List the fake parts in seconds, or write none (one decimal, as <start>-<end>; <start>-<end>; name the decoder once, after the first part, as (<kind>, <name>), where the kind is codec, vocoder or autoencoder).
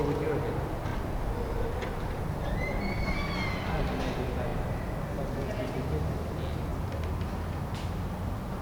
6.7-8.6 (vocoder, BigVGAN v2)